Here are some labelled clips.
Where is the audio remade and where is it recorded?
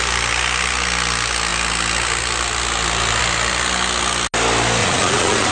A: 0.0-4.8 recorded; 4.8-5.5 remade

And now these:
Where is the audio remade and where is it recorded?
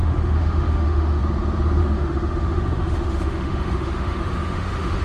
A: 0.0-1.2 remade; 1.2-1.8 recorded; 1.8-5.0 remade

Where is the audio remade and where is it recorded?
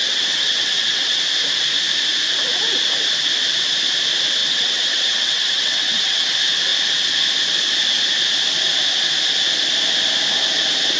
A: 0.0-1.2 remade; 1.2-4.4 recorded; 4.4-6.3 remade; 6.3-11.0 recorded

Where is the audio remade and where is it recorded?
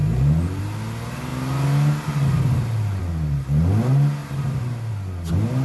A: 0.0-5.6 recorded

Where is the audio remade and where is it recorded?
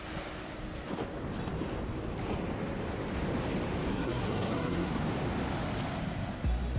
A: 0.0-3.9 recorded; 3.9-4.9 remade; 4.9-6.8 recorded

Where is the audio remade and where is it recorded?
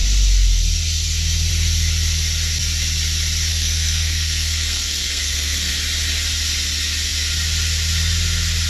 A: 0.0-3.5 recorded; 3.5-5.7 remade; 5.7-8.7 recorded